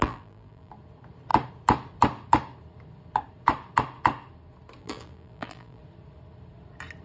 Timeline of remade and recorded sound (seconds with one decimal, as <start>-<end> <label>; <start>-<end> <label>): 0.0-0.7 remade; 0.7-4.8 recorded; 4.8-5.8 remade; 5.8-7.0 recorded